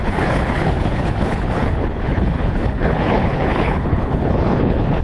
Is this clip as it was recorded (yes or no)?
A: no